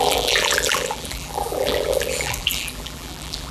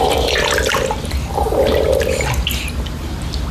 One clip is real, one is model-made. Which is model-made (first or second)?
first